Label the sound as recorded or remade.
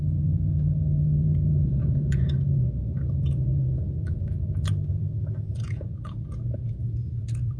remade